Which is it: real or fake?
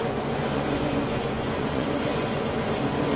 fake